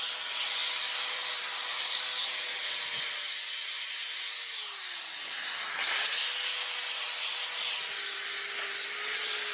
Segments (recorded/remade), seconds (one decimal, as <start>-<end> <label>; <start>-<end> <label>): 0.0-0.6 recorded; 0.6-1.3 remade; 1.3-9.5 recorded